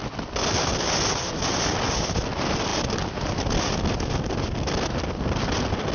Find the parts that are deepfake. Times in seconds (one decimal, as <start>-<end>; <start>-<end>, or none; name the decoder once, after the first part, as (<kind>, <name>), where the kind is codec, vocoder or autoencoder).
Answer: none